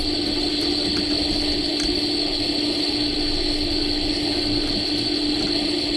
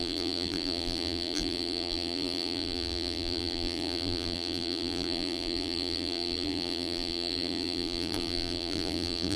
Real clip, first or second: first